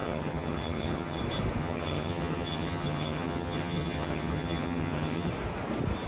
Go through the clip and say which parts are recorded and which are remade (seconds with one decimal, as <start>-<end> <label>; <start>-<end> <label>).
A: 0.0-1.2 remade; 1.2-1.6 recorded; 1.6-5.3 remade; 5.3-6.1 recorded